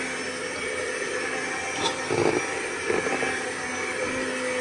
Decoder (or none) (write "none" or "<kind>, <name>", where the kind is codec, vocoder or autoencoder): none